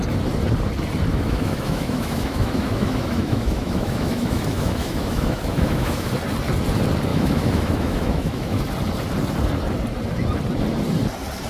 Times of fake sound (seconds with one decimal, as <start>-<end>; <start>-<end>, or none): 1.1-6.1; 7.1-8.6